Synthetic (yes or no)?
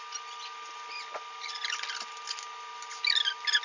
no